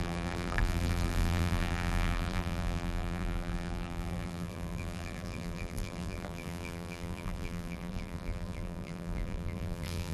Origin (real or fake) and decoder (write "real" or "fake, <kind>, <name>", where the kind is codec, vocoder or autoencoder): fake, vocoder, BigVGAN v2